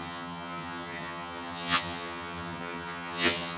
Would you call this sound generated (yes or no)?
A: yes